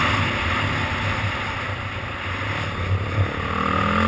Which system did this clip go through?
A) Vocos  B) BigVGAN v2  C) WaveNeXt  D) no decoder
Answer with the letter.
D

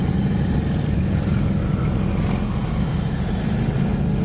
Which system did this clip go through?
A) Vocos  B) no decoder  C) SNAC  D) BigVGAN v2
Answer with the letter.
B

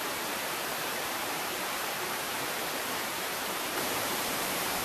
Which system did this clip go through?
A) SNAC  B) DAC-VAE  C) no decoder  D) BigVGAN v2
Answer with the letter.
D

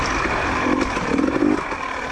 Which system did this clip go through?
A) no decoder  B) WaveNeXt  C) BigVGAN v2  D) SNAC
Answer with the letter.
A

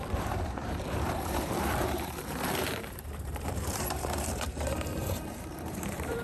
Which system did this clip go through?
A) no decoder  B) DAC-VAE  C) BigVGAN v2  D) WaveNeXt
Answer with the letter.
C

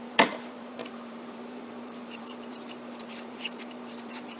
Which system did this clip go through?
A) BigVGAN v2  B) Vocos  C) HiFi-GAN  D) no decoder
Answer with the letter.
A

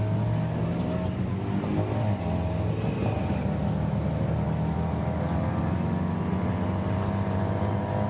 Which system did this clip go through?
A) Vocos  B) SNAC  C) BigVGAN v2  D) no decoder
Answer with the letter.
D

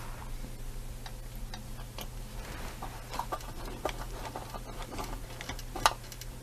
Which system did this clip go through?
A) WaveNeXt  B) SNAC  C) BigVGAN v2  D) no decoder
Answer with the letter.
D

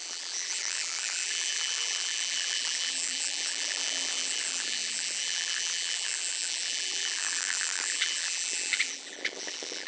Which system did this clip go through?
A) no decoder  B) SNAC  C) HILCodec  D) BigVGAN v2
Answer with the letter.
D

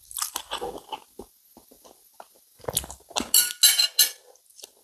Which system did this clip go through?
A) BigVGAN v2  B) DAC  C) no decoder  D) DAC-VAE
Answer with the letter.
C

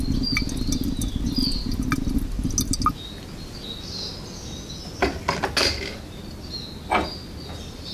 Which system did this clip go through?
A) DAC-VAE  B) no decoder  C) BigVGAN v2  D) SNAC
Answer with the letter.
B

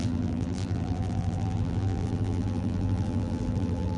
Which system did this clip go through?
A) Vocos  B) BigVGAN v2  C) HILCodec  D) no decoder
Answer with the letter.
B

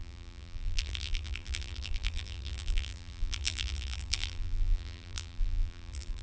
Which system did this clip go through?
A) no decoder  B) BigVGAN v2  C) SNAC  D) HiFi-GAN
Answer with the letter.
B